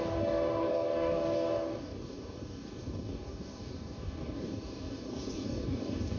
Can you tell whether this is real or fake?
fake